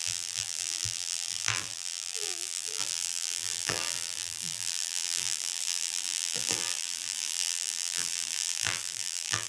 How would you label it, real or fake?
fake